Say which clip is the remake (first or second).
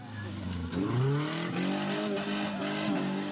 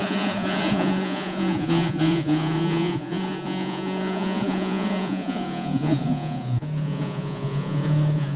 second